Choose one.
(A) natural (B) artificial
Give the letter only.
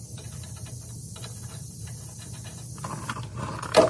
A